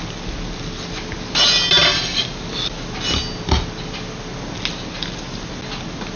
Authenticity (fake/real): real